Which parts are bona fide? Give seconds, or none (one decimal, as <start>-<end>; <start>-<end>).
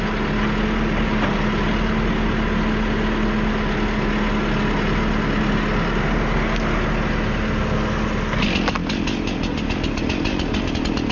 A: 0.0-11.1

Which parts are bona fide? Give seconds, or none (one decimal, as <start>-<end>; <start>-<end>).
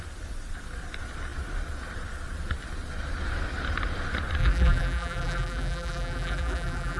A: 0.0-4.4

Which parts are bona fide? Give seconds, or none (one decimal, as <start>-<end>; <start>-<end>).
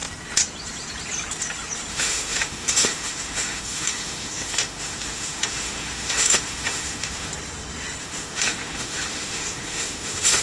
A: 0.0-1.9; 7.3-8.0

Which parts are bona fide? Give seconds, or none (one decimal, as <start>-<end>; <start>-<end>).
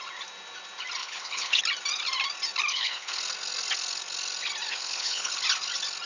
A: 0.0-1.0; 1.6-2.7; 3.2-4.7; 5.3-6.1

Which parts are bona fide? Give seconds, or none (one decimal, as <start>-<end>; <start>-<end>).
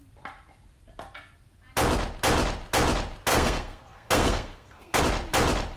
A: 0.0-3.3; 5.0-5.8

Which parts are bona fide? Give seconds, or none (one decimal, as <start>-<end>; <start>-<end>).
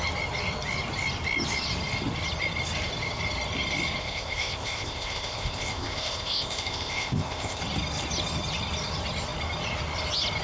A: 0.0-4.0; 7.6-10.4